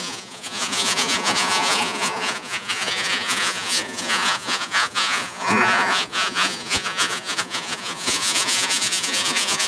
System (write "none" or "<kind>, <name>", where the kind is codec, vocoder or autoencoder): vocoder, Vocos